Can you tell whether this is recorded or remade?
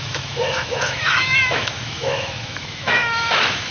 remade